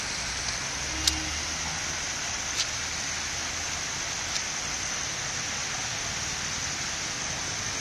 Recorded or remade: recorded